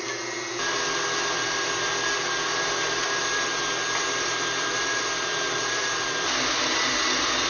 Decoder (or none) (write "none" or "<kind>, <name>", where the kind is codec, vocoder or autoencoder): none